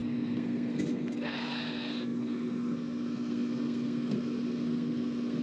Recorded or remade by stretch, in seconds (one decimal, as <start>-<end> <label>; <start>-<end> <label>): 0.0-5.4 remade